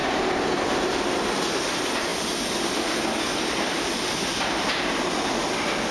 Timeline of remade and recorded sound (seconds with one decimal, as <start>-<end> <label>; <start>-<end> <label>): 0.0-5.9 recorded